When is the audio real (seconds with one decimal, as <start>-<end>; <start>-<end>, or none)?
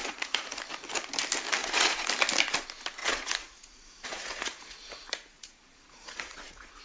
0.6-1.6; 2.1-3.0